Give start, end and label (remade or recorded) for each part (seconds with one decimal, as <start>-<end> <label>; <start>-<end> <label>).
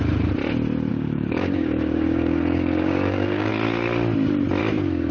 0.0-0.9 recorded; 0.9-3.5 remade; 3.5-4.6 recorded; 4.6-5.1 remade